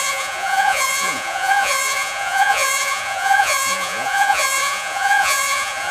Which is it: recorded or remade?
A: remade